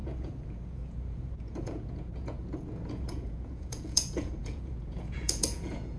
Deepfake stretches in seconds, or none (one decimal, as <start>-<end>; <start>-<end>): 0.0-6.0